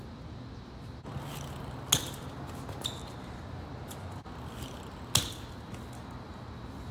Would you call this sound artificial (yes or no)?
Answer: no